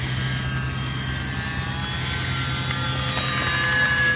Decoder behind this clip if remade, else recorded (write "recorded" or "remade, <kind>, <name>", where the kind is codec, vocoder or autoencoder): recorded